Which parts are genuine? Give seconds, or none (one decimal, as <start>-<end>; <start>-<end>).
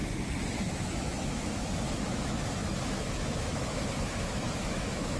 0.0-0.7